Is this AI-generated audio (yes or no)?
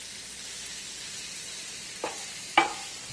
no